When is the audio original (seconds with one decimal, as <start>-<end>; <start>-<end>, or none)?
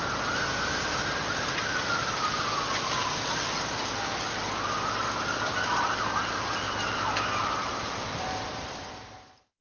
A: 0.0-0.7; 3.5-7.6; 8.9-9.6